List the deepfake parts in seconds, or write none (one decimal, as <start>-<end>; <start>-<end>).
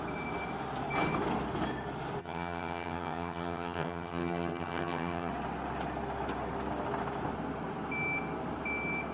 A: 2.2-5.3